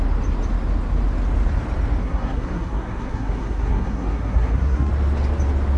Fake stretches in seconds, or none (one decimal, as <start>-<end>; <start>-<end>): 2.0-4.9